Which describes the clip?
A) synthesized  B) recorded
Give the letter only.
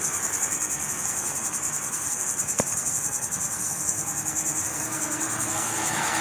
A